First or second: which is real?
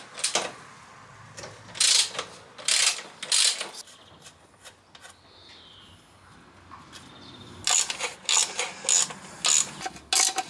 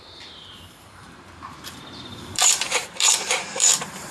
first